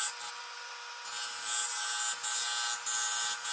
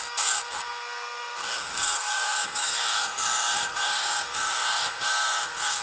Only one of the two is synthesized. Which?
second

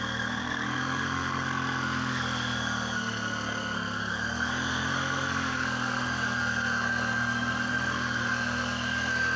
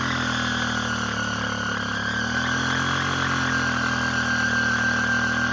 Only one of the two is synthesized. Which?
first